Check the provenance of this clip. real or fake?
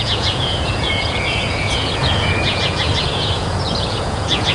fake